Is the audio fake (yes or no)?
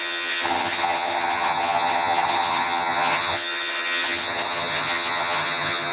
yes